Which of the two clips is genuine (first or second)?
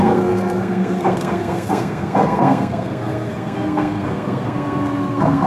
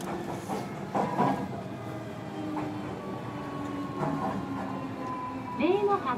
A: second